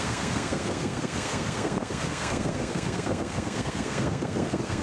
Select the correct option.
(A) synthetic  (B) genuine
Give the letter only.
A